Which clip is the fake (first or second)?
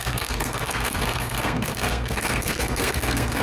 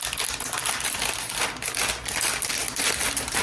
first